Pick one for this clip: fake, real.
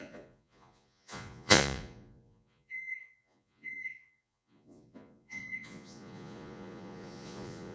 fake